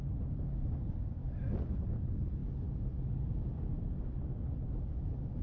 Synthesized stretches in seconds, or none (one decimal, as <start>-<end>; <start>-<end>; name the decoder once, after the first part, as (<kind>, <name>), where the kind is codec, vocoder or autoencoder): none